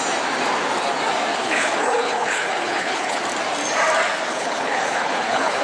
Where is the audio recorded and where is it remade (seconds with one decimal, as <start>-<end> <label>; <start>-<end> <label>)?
0.0-1.3 recorded; 1.3-3.2 remade; 3.2-4.3 recorded; 4.3-5.6 remade